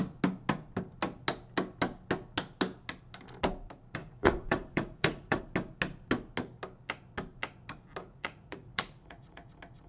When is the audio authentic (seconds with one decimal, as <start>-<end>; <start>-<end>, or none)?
0.0-4.0; 5.4-8.0; 9.5-9.9